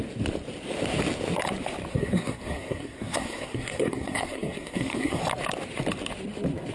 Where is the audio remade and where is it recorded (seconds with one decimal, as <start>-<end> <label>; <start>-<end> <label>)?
0.0-1.9 recorded; 1.9-5.2 remade; 5.2-6.7 recorded